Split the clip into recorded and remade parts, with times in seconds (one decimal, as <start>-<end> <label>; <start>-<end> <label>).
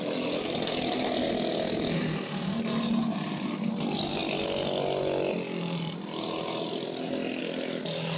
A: 0.0-8.2 recorded